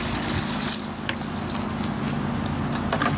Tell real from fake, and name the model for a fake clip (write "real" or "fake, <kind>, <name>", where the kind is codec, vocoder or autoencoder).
real